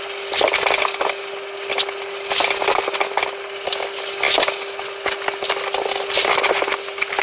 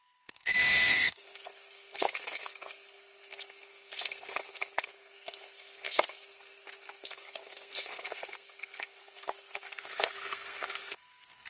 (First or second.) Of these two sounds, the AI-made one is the second